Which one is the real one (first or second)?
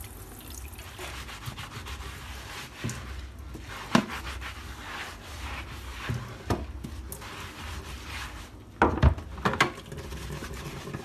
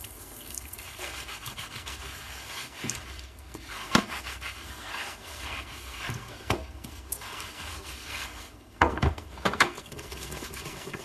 first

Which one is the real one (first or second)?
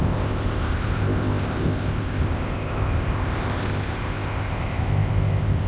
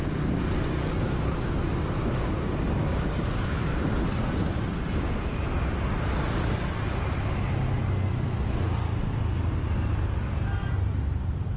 second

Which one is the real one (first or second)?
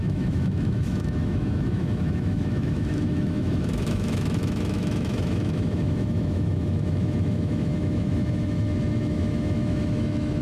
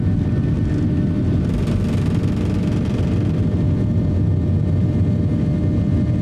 second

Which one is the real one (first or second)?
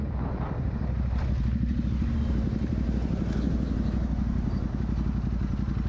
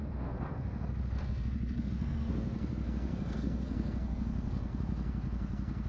first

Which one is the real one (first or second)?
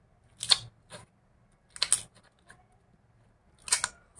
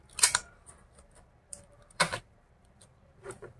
first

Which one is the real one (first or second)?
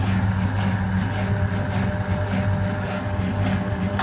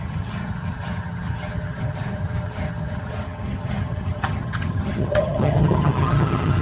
first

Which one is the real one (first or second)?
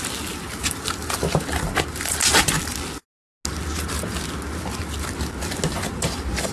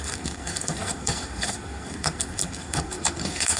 first